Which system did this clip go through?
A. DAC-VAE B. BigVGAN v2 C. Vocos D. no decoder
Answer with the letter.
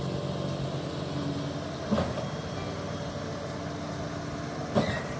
D